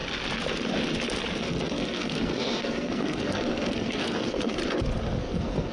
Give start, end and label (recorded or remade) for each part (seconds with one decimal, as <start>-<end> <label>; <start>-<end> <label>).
0.0-1.4 recorded; 1.4-4.6 remade; 4.6-5.2 recorded; 5.2-5.7 remade